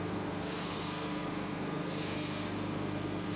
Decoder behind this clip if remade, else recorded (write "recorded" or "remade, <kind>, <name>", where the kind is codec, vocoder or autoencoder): remade, codec, SNAC